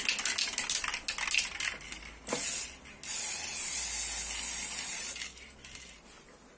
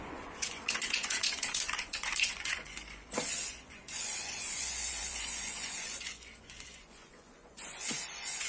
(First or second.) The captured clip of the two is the first